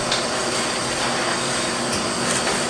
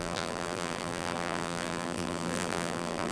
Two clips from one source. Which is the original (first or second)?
first